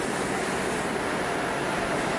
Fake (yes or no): no